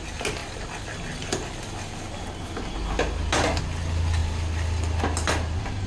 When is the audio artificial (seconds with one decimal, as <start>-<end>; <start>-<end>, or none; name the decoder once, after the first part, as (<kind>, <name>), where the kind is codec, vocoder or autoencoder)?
none